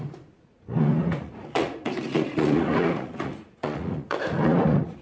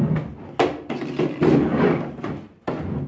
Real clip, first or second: second